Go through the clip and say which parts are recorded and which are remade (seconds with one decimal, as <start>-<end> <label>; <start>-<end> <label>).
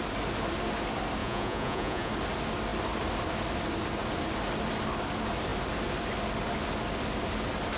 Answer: 0.0-1.2 recorded; 1.2-2.1 remade; 2.1-7.8 recorded